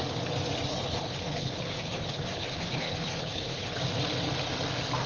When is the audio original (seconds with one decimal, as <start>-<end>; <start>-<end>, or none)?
0.0-0.7; 3.8-5.1